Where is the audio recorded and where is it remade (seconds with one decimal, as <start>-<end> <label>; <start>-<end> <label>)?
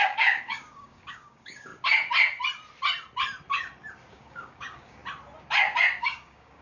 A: 0.0-1.7 remade; 1.7-4.1 recorded; 4.1-5.0 remade; 5.0-6.0 recorded; 6.0-6.6 remade